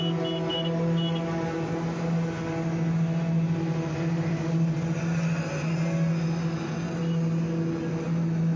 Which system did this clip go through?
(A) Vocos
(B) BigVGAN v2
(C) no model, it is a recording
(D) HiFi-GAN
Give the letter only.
C